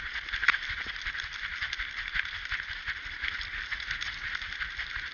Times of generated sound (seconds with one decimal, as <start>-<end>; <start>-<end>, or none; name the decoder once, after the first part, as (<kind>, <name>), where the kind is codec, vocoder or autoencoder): none